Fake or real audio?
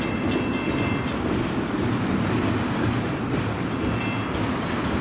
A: real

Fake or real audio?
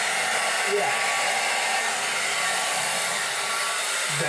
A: real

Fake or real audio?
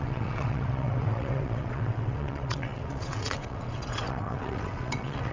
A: fake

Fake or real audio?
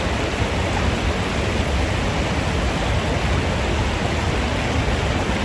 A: real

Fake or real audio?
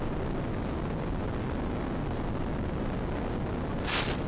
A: real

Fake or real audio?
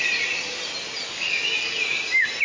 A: real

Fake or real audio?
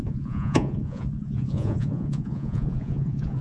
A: fake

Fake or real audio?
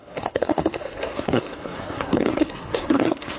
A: fake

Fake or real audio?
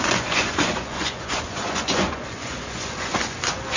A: fake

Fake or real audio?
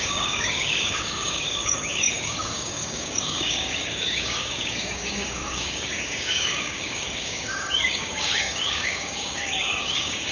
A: fake